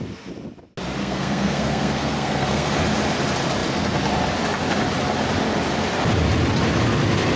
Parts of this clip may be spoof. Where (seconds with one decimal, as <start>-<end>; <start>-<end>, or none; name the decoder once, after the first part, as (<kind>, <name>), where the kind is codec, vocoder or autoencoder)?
1.0-2.7 (codec, SNAC)